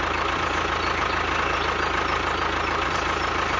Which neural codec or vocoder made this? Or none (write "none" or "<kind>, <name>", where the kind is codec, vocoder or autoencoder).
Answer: none